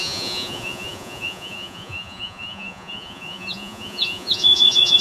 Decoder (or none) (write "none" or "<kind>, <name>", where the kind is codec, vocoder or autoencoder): vocoder, Vocos